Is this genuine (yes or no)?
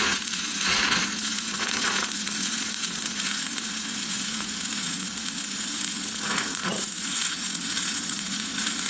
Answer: no